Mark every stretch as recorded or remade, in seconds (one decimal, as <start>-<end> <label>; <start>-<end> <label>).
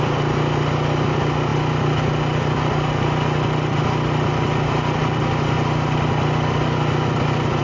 0.0-7.6 recorded